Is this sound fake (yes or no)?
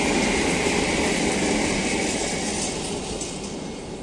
no